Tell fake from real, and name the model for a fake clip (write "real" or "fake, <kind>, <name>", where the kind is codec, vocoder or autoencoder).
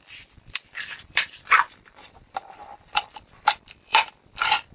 fake, vocoder, BigVGAN v2